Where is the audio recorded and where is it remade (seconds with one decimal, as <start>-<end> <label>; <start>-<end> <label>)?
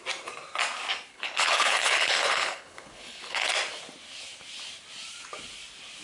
0.0-1.1 recorded; 1.1-3.5 remade; 3.5-6.0 recorded